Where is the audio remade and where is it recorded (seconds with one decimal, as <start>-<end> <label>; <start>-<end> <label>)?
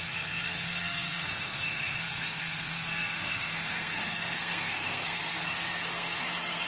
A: 0.0-6.7 remade